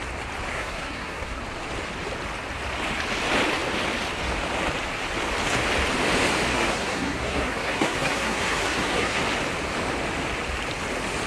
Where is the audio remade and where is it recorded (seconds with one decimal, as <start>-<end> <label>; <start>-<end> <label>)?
0.0-0.5 recorded; 0.5-1.4 remade; 1.4-6.5 recorded; 6.5-9.2 remade; 9.2-11.3 recorded